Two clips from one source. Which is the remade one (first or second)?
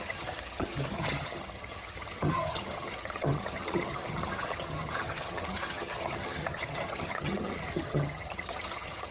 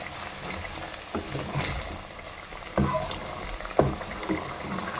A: first